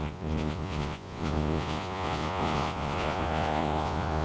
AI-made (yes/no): yes